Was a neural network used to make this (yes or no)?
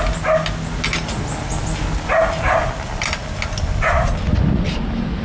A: no